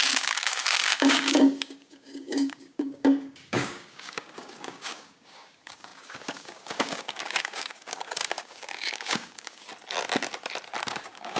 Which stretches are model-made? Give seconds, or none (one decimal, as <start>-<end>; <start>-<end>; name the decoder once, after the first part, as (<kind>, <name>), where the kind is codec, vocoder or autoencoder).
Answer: 0.0-9.7 (codec, DAC); 10.9-11.4